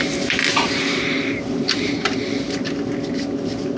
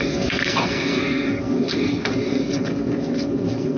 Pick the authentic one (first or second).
first